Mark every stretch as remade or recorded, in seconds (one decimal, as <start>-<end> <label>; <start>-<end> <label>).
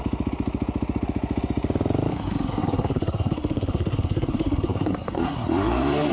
0.0-2.1 recorded; 2.1-6.1 remade